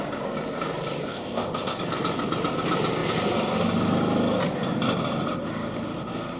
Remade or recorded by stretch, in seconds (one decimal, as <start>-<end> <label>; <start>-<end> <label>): 0.0-1.1 recorded; 1.1-1.8 remade; 1.8-6.4 recorded